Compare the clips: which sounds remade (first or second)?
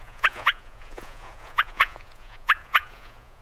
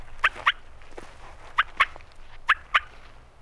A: first